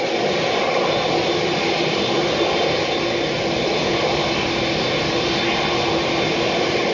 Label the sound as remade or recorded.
recorded